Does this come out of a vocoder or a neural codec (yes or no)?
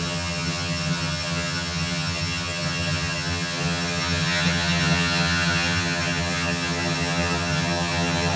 yes